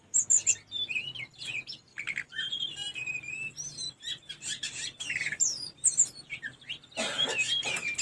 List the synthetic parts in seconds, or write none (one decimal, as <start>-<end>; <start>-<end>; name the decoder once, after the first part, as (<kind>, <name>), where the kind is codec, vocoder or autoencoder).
1.9-6.7 (vocoder, BigVGAN v2)